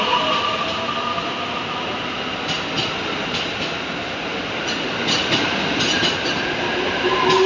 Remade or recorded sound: recorded